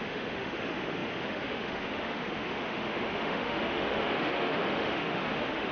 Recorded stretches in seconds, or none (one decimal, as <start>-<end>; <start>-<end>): none